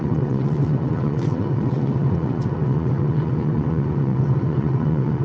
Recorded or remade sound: remade